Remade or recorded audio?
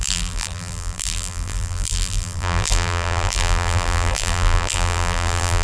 remade